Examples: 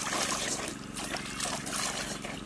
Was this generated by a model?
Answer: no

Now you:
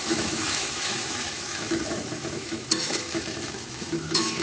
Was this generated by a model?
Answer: yes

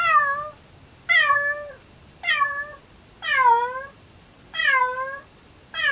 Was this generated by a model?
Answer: no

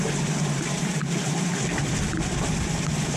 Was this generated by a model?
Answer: yes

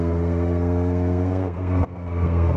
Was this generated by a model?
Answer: yes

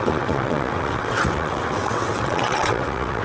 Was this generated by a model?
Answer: yes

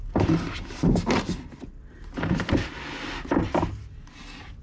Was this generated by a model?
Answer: no